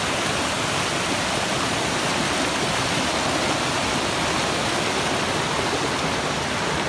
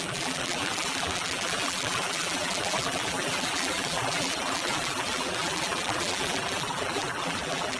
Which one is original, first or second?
first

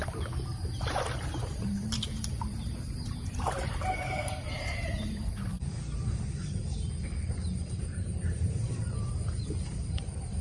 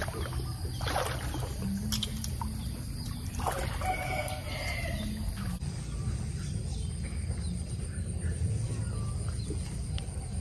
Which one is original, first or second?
second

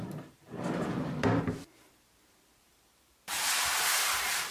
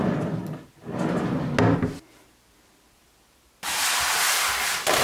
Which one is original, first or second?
second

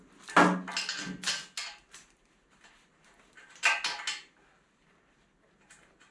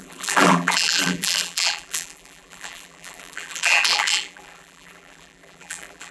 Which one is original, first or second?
first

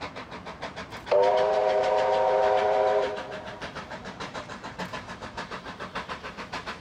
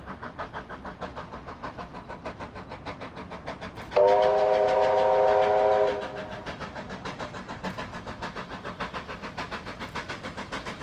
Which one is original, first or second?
second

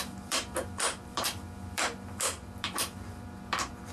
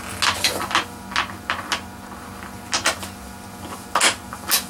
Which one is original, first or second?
second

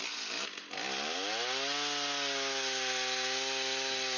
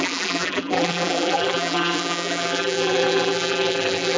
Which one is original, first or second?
first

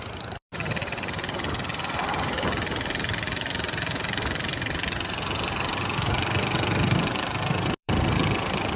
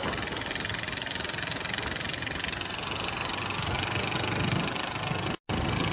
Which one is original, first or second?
second